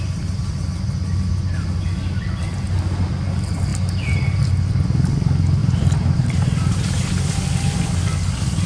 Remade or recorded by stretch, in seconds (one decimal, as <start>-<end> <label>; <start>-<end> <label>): 0.0-5.6 recorded; 5.6-7.1 remade; 7.1-8.7 recorded

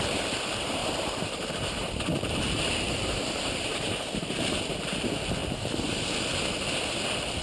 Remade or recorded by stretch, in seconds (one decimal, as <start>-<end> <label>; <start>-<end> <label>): 0.0-0.8 recorded; 0.8-3.2 remade; 3.2-3.7 recorded; 3.7-4.4 remade; 4.4-5.4 recorded; 5.4-6.0 remade; 6.0-7.4 recorded

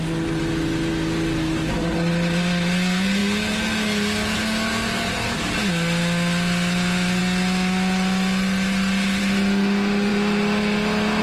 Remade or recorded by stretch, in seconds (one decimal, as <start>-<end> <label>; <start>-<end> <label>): 0.0-11.2 recorded

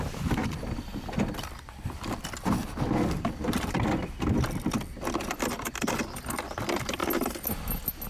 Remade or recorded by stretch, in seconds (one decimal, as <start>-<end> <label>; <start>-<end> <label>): 0.0-0.9 remade; 0.9-1.4 recorded; 1.4-7.0 remade; 7.0-8.1 recorded

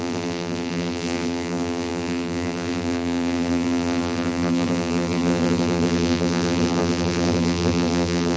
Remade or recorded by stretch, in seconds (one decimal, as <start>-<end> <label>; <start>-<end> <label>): 0.0-8.4 remade

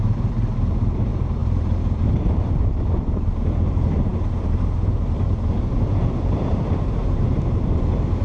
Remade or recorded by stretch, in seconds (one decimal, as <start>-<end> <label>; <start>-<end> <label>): 0.0-8.2 remade

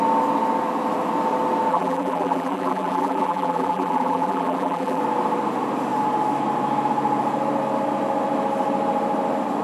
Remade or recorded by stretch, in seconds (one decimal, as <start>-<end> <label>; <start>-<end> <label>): 0.0-1.7 recorded; 1.7-5.0 remade; 5.0-9.6 recorded